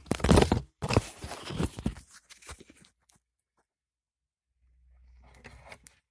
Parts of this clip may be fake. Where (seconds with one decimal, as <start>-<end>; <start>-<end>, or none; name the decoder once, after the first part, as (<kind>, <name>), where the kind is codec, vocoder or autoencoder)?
none